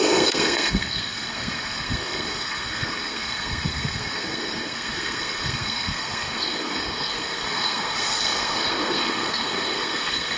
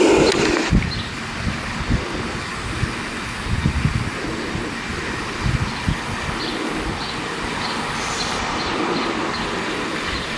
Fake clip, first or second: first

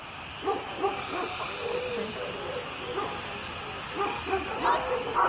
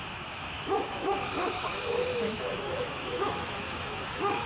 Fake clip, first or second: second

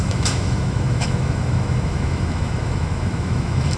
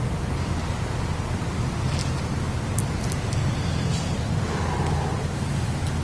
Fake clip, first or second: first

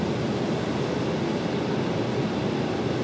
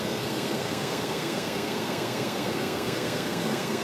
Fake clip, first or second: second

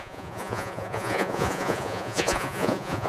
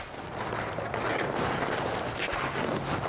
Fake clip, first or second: first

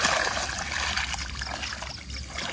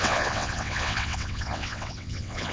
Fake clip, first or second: second